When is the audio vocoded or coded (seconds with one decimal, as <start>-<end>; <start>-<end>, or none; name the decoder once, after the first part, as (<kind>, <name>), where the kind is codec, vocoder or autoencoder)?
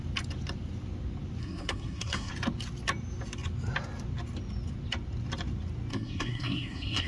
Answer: 1.4-2.3 (codec, SNAC); 5.9-7.1